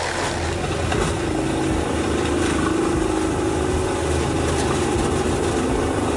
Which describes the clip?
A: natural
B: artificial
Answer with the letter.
A